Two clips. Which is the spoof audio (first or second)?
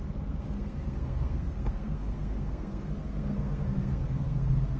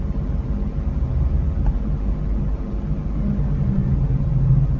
first